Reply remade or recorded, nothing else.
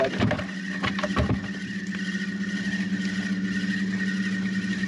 recorded